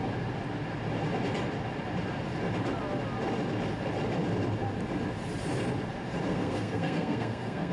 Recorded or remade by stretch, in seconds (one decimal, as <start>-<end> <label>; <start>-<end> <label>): 0.0-6.3 recorded; 6.3-7.7 remade